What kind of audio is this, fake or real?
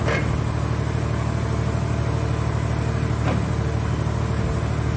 real